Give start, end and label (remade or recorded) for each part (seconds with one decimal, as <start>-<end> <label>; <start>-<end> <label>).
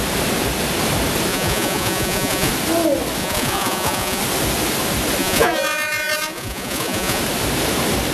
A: 0.0-1.3 recorded; 1.3-2.5 remade; 2.5-3.2 recorded; 3.2-4.2 remade; 4.2-5.2 recorded; 5.2-7.2 remade; 7.2-8.1 recorded